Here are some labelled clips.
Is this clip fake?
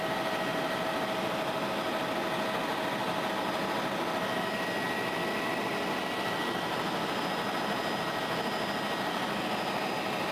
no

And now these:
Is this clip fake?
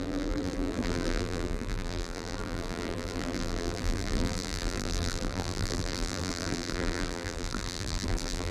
yes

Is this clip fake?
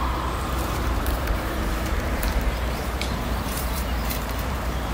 yes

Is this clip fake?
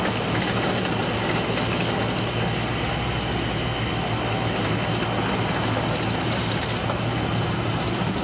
no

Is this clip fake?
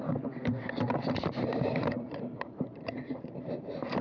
yes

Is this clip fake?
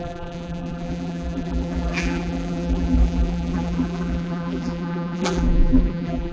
yes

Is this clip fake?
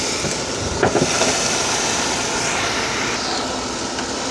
no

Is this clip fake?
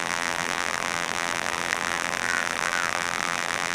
yes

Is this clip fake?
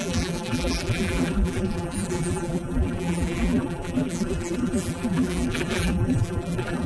yes